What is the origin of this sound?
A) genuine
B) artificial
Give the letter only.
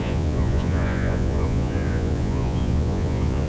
B